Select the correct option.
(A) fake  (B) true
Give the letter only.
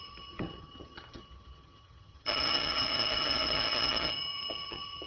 A